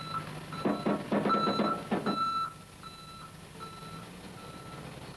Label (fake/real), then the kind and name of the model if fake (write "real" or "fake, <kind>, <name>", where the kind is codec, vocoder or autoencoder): real